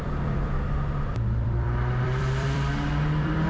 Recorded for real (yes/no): no